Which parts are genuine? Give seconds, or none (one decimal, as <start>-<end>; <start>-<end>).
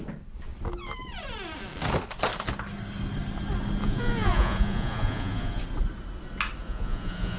0.0-3.8; 5.6-6.6